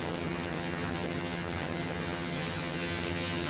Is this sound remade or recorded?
remade